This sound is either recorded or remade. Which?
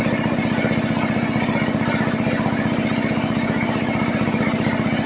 recorded